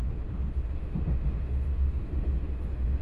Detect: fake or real fake